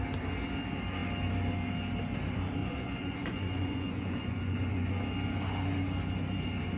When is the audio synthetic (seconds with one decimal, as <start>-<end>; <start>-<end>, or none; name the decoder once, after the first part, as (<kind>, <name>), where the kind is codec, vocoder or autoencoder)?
2.6-4.9 (vocoder, Vocos)